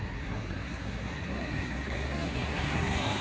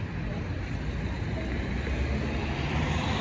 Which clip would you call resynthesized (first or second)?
first